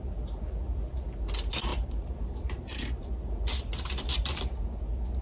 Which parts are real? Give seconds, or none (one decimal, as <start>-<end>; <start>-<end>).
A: 0.0-5.2